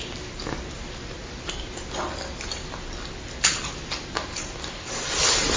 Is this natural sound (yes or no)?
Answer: yes